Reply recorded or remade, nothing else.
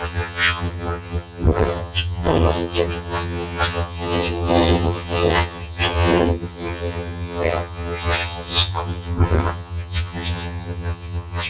remade